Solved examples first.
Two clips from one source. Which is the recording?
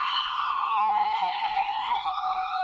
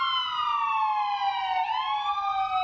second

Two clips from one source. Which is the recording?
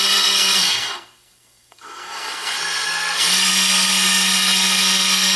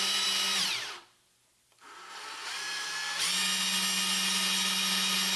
second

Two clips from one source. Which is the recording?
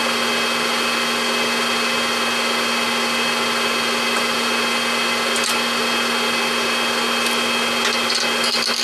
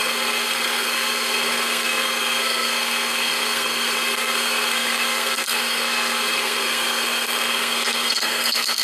first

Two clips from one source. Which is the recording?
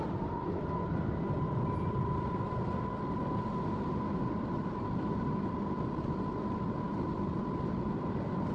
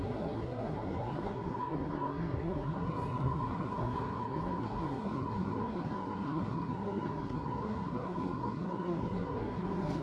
first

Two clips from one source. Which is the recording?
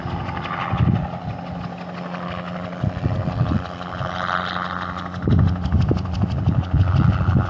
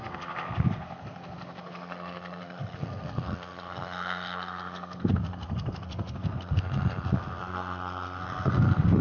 first